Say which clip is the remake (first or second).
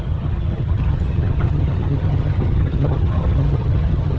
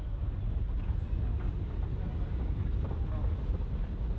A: first